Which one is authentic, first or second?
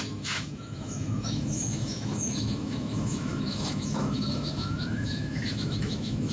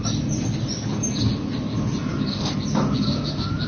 second